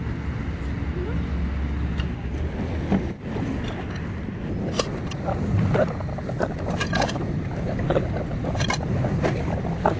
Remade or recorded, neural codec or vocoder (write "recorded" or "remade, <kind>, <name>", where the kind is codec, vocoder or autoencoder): recorded